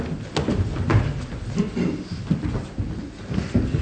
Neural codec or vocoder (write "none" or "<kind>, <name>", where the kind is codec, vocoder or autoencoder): none